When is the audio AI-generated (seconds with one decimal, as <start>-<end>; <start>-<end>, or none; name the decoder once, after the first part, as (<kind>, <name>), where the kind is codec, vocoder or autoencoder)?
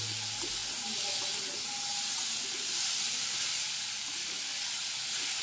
none